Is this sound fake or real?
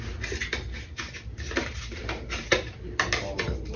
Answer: real